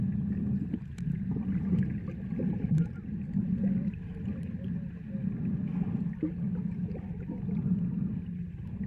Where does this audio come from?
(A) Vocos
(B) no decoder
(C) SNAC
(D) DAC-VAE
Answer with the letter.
B